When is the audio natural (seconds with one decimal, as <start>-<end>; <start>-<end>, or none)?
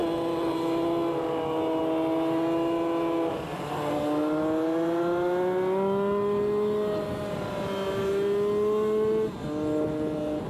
0.0-10.5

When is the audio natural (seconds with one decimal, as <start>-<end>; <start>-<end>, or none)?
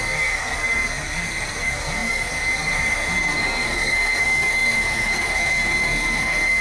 none